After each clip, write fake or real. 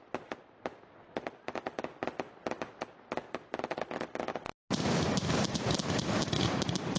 real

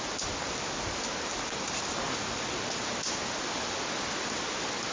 real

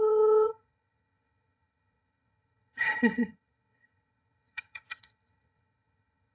fake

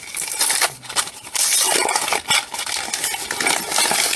real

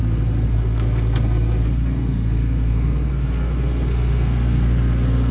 fake